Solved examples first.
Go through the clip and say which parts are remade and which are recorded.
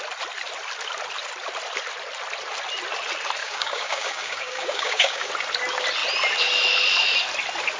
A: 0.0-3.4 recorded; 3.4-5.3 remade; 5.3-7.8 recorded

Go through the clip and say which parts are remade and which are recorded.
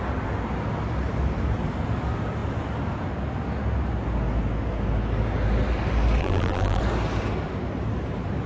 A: 0.0-6.2 recorded; 6.2-6.8 remade; 6.8-8.5 recorded